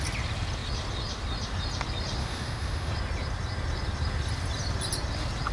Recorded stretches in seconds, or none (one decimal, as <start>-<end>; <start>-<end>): 0.0-2.2; 2.9-5.5

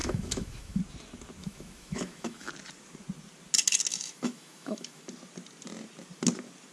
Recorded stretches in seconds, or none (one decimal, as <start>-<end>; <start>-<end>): 0.8-1.4; 2.5-3.9; 5.0-6.7

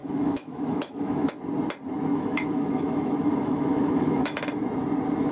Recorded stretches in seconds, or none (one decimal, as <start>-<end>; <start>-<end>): 1.3-2.1; 4.4-5.3